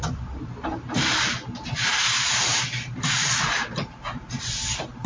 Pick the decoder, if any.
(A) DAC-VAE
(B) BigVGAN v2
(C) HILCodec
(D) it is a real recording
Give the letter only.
B